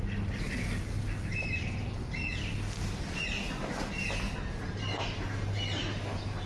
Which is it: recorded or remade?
recorded